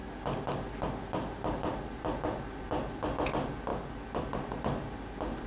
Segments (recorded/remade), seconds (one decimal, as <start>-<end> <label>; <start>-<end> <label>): 0.0-5.5 recorded